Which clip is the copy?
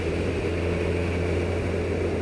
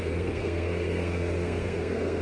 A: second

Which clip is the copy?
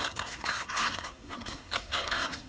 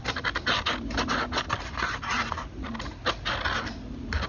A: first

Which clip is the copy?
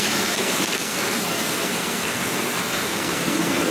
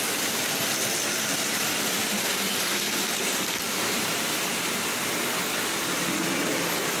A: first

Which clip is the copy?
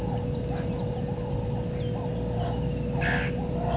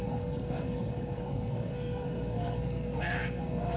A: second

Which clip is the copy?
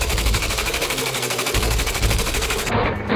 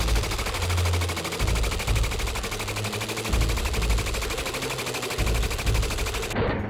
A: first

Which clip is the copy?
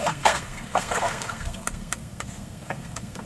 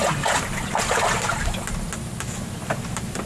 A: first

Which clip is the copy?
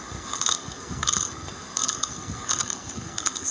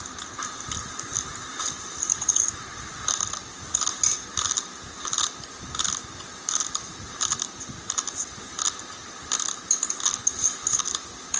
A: first